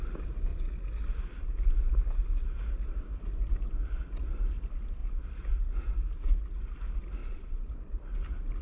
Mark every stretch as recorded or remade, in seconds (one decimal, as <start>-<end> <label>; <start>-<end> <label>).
0.0-7.2 recorded; 7.2-7.7 remade; 7.7-8.6 recorded